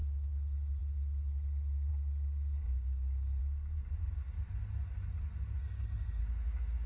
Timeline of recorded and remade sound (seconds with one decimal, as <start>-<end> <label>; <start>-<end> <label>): 0.0-5.6 recorded; 5.6-6.2 remade; 6.2-6.9 recorded